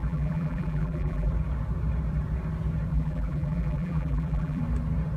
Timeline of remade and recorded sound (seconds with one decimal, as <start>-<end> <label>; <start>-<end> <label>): 0.0-1.3 remade; 1.3-2.9 recorded; 2.9-4.6 remade; 4.6-5.2 recorded